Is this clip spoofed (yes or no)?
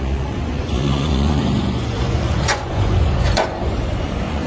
yes